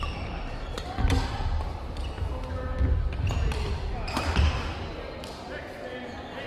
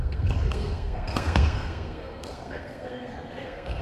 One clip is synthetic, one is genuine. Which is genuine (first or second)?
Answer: first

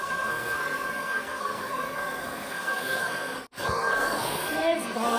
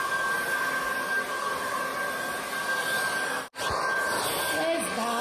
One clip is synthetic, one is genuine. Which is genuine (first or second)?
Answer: second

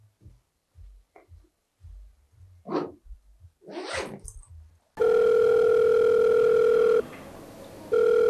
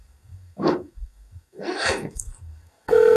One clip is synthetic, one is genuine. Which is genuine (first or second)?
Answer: first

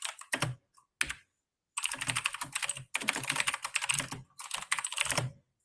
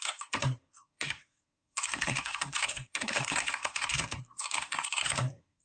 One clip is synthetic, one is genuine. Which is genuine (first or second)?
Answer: first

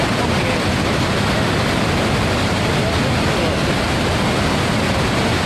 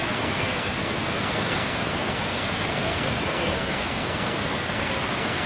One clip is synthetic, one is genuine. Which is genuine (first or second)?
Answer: first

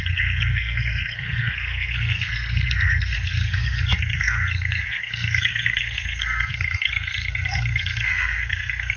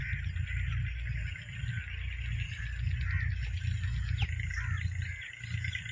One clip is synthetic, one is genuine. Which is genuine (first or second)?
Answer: second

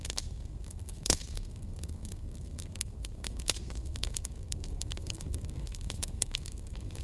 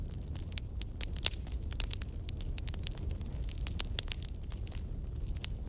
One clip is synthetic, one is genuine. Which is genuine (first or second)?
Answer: second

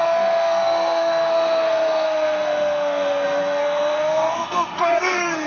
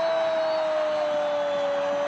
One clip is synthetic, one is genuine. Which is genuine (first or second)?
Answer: second